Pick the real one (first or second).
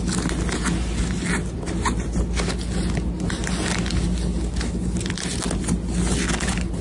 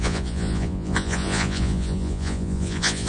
first